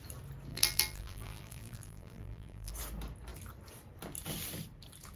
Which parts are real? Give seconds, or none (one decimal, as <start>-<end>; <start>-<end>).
0.0-0.5; 2.7-5.2